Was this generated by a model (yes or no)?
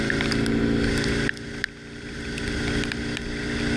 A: no